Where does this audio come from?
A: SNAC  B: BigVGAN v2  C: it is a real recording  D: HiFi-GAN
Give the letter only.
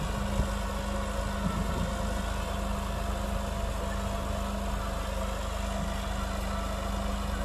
C